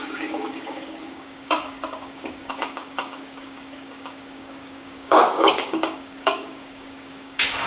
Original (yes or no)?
no